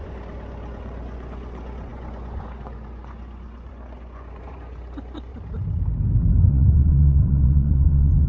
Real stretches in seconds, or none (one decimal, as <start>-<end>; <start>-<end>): 5.3-6.5